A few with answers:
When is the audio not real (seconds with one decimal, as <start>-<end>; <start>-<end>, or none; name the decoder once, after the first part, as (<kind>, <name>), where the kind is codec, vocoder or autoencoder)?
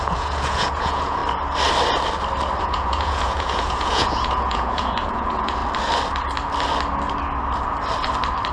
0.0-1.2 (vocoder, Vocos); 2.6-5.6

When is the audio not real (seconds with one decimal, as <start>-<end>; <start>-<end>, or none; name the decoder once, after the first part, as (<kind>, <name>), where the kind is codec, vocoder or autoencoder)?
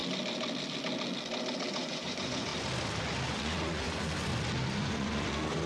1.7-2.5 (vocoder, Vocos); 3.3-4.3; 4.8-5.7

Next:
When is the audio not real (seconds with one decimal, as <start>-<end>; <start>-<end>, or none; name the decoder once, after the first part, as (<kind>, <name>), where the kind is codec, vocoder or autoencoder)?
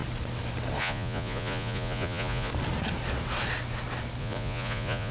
0.8-2.5 (vocoder, Vocos); 4.2-5.1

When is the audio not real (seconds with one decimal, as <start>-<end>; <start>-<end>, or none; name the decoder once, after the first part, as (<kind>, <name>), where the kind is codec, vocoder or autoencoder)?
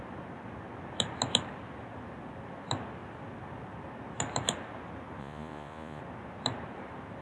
5.2-6.0 (vocoder, Vocos)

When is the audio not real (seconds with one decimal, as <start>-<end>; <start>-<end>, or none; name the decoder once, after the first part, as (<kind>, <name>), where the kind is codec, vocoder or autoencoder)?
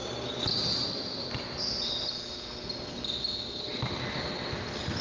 none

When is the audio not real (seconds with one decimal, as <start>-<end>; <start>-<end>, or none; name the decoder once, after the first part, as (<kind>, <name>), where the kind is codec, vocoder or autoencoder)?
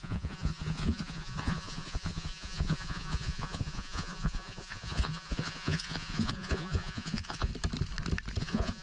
0.0-7.5 (vocoder, Vocos); 8.4-8.8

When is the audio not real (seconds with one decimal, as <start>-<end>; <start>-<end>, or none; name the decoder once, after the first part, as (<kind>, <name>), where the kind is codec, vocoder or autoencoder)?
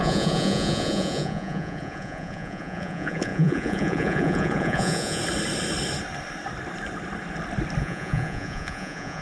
0.0-5.2 (vocoder, Vocos); 7.8-9.2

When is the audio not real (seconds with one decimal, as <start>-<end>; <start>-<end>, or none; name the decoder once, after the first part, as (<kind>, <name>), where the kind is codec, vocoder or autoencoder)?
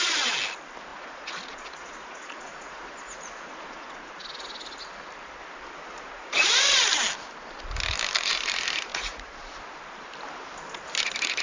0.9-4.1 (vocoder, Vocos); 5.9-6.4; 8.9-9.6